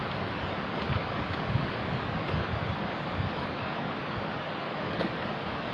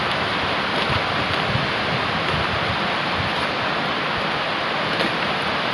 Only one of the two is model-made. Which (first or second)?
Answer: first